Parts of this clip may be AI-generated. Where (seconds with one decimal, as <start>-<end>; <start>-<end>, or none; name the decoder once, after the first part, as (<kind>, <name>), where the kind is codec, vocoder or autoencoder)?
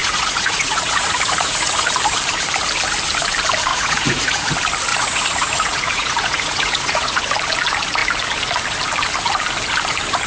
0.0-1.9 (vocoder, Vocos); 3.7-4.5; 4.9-7.2